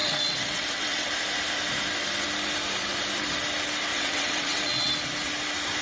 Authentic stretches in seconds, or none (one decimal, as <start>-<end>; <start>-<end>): 1.1-3.9; 4.9-5.8